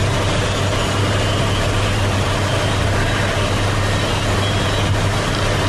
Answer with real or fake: real